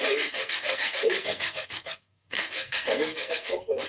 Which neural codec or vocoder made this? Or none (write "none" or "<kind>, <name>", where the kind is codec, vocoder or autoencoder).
codec, SNAC